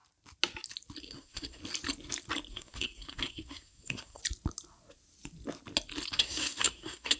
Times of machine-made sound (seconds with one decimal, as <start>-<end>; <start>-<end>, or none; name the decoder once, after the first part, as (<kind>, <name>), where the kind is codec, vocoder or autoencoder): 1.0-1.6 (codec, SNAC); 2.5-4.2; 6.1-7.2